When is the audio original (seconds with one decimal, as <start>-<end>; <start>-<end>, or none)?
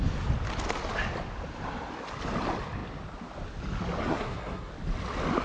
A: 0.0-4.0; 4.7-5.4